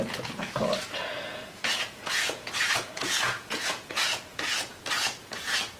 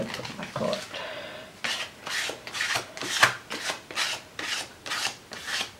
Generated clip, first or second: first